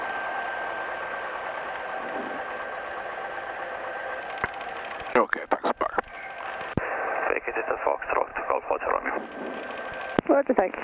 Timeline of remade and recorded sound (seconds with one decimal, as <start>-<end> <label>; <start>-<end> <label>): 0.0-8.3 recorded; 8.3-9.1 remade; 9.1-10.8 recorded